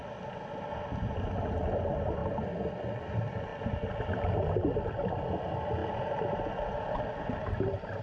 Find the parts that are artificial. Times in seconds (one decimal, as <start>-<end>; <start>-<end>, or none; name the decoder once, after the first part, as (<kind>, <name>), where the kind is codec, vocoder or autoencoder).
5.8-6.5 (vocoder, BigVGAN v2)